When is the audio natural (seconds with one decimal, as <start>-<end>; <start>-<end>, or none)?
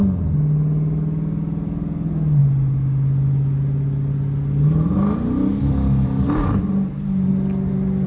0.0-8.1